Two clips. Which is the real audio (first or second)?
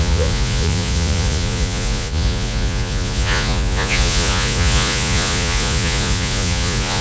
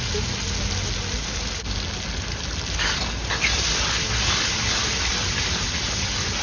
second